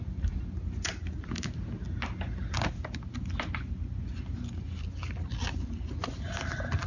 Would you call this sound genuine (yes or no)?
yes